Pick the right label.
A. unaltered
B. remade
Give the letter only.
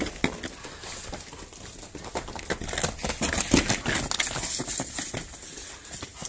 A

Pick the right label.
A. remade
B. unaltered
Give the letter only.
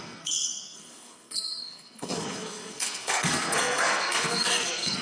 A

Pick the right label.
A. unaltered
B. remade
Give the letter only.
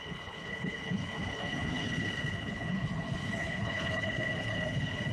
B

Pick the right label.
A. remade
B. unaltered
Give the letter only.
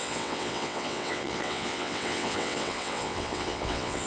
A